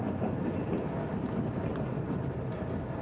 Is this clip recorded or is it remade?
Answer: recorded